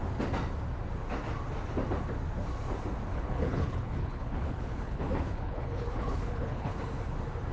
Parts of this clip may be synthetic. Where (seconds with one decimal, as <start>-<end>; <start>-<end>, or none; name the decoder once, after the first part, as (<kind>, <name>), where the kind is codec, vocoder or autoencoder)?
3.1-6.8 (codec, HILCodec)